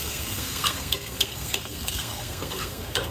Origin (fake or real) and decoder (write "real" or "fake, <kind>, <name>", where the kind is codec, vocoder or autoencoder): fake, codec, SNAC